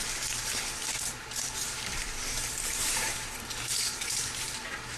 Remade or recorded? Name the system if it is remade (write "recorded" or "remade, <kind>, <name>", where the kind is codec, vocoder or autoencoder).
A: remade, vocoder, BigVGAN v2